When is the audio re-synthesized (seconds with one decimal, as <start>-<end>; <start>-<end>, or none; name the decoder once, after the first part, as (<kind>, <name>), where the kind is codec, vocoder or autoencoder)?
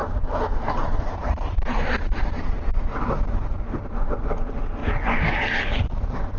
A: 0.0-4.8 (vocoder, BigVGAN v2); 5.6-6.4